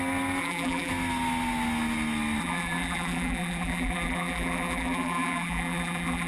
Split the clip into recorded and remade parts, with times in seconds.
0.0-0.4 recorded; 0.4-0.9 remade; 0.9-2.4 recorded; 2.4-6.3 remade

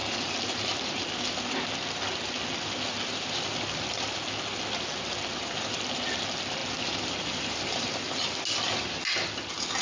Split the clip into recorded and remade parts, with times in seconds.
0.0-1.1 remade; 1.1-6.6 recorded; 6.6-8.3 remade; 8.3-9.8 recorded

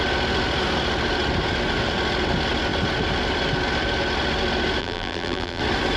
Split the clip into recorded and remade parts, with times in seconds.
0.0-4.8 recorded; 4.8-5.6 remade; 5.6-6.0 recorded

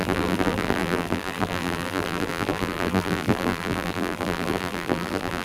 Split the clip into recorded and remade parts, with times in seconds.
0.0-5.4 remade